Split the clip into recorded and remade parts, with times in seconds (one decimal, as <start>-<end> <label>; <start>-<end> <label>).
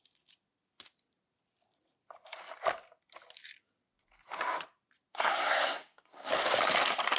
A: 0.0-5.1 recorded; 5.1-6.3 remade; 6.3-7.2 recorded